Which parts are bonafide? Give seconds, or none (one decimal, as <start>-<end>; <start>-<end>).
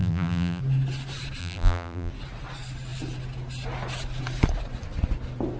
0.6-1.4; 2.1-5.6